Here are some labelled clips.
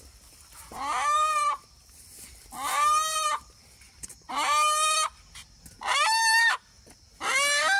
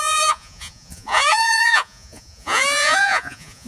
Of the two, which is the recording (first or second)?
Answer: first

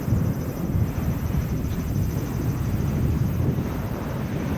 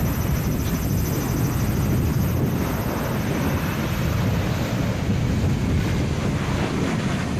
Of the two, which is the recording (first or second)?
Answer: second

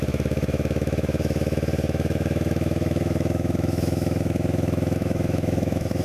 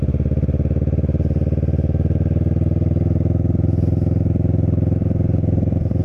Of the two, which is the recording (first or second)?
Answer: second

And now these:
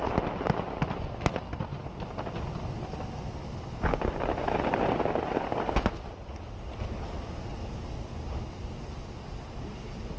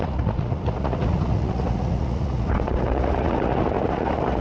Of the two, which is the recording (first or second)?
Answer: first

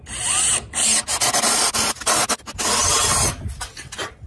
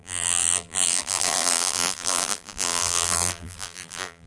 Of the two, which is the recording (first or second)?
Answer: first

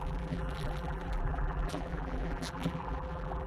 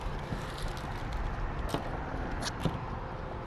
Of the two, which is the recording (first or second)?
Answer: second